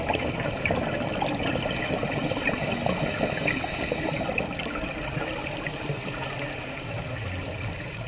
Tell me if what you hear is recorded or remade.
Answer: recorded